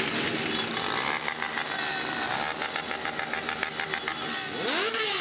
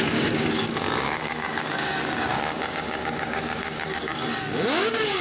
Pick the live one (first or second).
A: first